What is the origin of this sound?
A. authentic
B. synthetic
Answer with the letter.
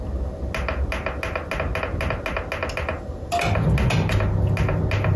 A